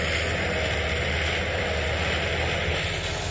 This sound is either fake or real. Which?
real